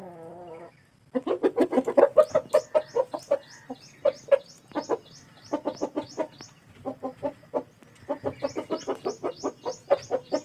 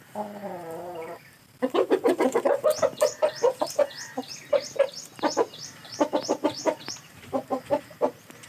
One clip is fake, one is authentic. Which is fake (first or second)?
second